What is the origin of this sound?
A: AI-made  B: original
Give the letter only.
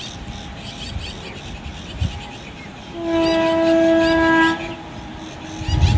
B